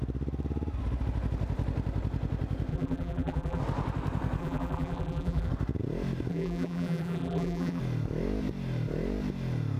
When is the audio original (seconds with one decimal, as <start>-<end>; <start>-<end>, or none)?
0.0-2.7; 3.6-4.4; 5.5-6.3; 7.8-9.8